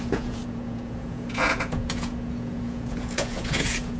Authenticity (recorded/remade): remade